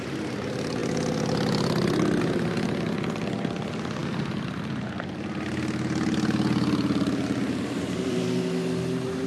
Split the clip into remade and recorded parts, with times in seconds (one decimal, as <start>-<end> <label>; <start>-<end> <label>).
0.0-9.3 recorded